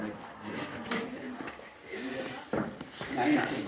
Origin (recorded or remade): recorded